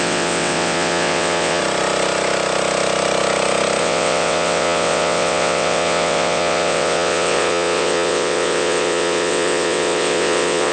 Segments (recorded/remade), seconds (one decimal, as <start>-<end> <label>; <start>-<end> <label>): 0.0-1.6 remade; 1.6-3.8 recorded; 3.8-10.7 remade